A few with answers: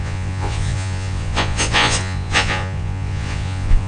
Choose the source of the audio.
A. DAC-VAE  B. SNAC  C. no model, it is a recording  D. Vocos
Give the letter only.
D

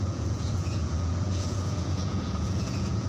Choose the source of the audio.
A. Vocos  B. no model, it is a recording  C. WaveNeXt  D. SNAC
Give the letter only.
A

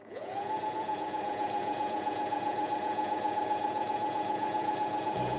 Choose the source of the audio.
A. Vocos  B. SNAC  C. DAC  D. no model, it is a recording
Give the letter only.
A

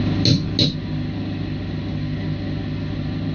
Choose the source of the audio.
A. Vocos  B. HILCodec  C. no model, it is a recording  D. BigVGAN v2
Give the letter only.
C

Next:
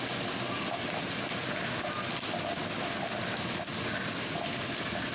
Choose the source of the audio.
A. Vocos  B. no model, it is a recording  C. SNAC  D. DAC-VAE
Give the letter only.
B